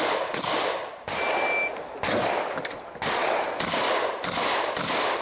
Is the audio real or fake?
real